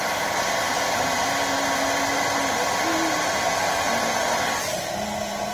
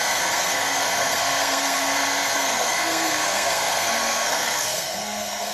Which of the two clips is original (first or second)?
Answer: first